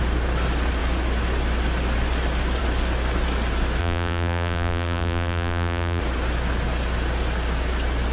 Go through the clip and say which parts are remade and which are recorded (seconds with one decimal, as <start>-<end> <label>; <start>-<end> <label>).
0.0-3.8 recorded; 3.8-6.0 remade; 6.0-8.1 recorded